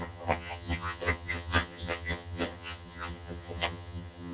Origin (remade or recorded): remade